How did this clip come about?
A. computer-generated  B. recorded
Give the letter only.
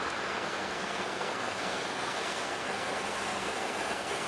A